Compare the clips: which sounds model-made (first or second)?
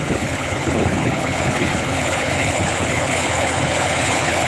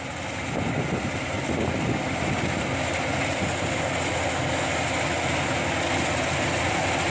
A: first